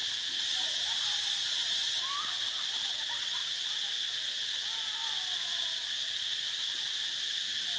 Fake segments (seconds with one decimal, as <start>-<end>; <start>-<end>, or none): 2.9-3.4